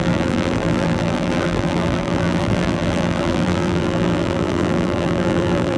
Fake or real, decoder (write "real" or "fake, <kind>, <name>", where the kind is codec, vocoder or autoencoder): fake, vocoder, BigVGAN v2